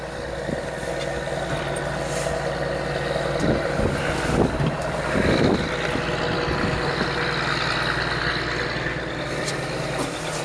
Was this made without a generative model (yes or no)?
yes